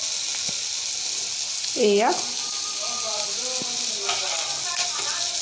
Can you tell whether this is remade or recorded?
recorded